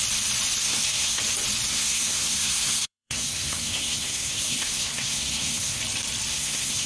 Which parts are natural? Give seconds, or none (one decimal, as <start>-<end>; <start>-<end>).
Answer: 0.0-0.6; 1.2-1.7; 5.8-6.3